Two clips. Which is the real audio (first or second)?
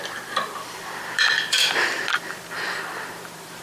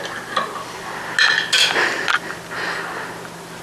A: second